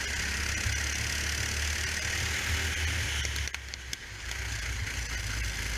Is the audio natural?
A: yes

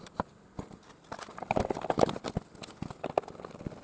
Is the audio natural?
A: yes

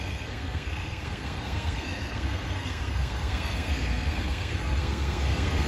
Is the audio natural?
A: no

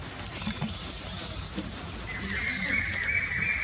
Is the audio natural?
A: yes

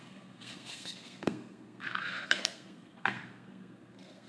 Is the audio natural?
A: no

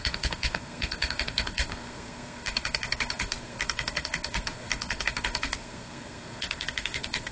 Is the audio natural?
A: no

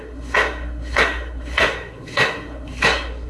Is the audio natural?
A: no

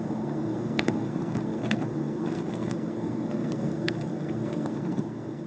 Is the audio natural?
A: no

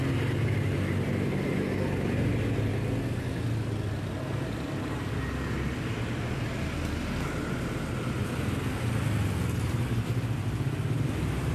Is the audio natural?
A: yes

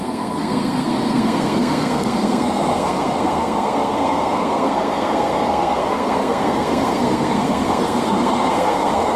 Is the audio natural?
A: no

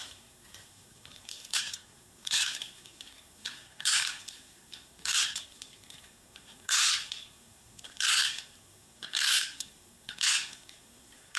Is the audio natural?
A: no